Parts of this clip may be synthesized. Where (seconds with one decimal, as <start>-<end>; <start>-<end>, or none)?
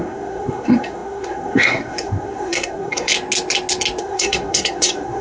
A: 0.0-3.1; 4.0-5.2